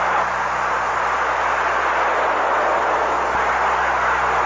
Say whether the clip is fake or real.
real